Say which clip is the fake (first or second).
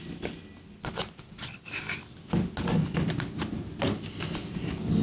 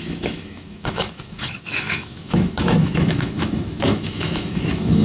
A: second